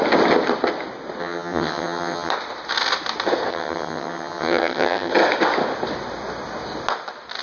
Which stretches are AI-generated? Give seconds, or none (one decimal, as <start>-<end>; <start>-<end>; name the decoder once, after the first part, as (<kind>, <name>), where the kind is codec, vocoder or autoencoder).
1.2-2.3 (vocoder, HiFi-GAN); 3.5-5.1